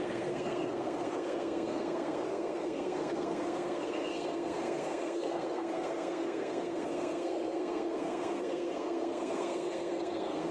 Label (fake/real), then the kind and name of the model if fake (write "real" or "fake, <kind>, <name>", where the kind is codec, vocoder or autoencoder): fake, codec, SNAC